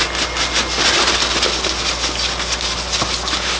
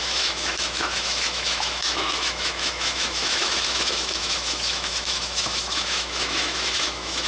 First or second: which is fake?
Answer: second